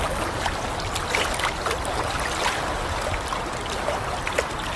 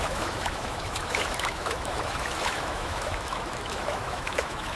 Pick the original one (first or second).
first